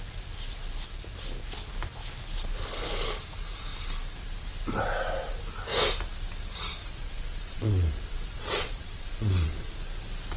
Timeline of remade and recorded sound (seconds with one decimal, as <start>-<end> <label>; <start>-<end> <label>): 0.0-6.8 recorded; 6.8-9.7 remade; 9.7-10.4 recorded